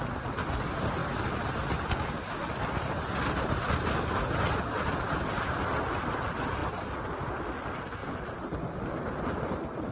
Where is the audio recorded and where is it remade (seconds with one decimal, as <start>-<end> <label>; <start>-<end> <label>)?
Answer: 0.0-1.0 recorded; 1.0-4.2 remade; 4.2-6.6 recorded; 6.6-7.4 remade; 7.4-9.9 recorded